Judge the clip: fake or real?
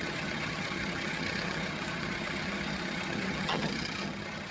fake